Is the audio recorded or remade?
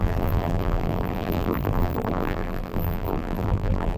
remade